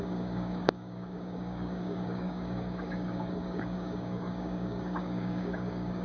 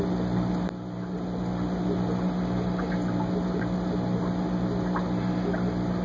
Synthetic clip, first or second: first